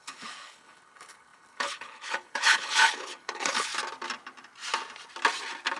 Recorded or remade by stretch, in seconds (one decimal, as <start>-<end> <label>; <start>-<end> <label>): 0.0-3.7 remade; 3.7-5.8 recorded